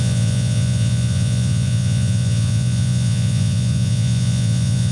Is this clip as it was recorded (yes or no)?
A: no